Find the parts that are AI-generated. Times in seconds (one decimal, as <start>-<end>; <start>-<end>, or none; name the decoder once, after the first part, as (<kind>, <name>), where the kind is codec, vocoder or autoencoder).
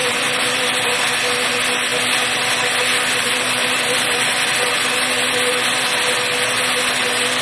0.0-1.0 (vocoder, BigVGAN v2); 2.9-4.7